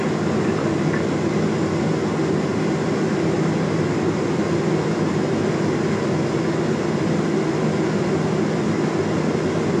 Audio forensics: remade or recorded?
recorded